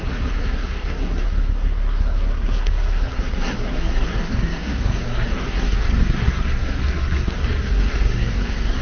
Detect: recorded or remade remade